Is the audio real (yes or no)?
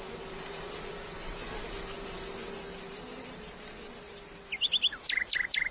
yes